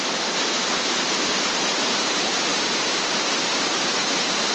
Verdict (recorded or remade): remade